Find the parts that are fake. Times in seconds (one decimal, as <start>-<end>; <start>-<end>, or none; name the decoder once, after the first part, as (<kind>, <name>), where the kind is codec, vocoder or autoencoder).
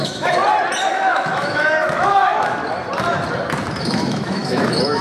0.0-0.4 (autoencoder, DAC-VAE); 0.9-2.6; 3.8-5.0